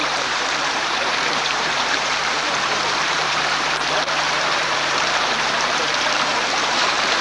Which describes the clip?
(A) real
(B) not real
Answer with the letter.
B